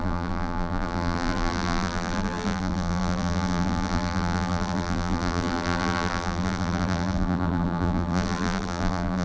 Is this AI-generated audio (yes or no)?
yes